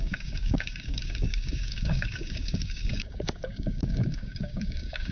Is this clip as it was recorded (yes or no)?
no